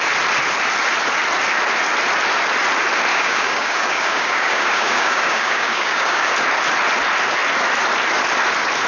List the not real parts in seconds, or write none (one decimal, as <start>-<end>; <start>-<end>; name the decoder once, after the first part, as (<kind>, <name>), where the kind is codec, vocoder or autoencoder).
3.1-6.3 (codec, DAC)